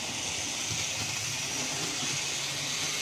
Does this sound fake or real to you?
real